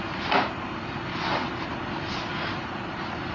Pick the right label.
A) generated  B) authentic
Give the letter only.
A